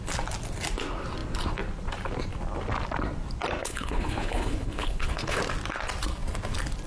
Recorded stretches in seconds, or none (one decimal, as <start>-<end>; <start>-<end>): 0.0-3.6; 5.4-6.9